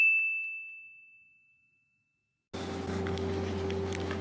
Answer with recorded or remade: recorded